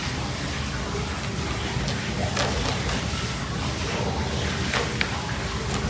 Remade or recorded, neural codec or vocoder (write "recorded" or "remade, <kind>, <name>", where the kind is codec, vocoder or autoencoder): recorded